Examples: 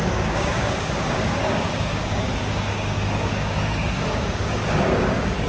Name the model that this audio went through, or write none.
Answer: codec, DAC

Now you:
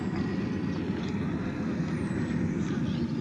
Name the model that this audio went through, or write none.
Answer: none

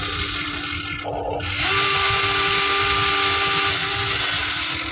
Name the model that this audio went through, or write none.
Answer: none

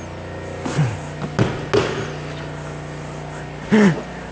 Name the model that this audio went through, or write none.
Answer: none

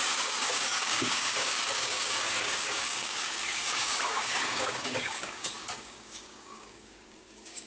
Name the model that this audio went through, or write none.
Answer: codec, DAC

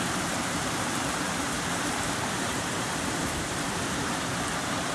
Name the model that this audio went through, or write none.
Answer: vocoder, BigVGAN v2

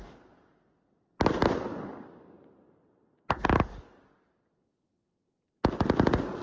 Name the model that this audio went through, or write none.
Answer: none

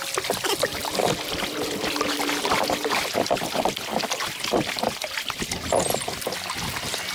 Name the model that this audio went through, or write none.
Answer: none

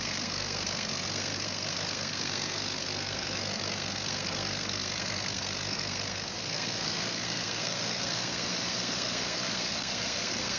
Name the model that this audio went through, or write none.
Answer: codec, SNAC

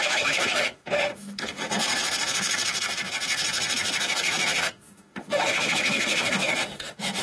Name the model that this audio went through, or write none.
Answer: autoencoder, DAC-VAE